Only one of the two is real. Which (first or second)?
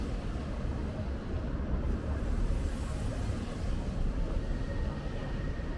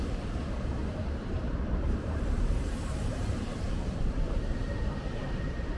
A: first